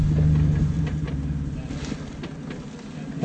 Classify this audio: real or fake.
real